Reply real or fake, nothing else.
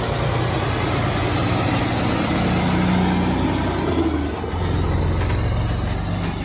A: real